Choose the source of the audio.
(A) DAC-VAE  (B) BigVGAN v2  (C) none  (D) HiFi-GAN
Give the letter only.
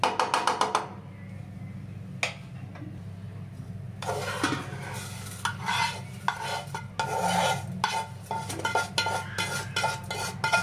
C